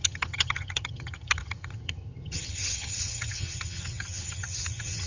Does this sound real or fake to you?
fake